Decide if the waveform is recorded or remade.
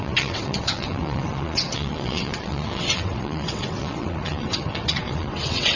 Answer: remade